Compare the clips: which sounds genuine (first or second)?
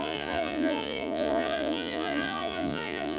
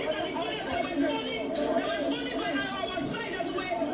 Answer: second